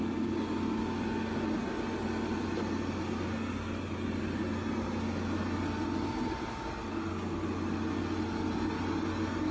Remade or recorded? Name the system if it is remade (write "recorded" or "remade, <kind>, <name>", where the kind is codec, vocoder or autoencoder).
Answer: recorded